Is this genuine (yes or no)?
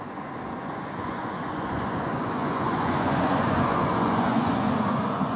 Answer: no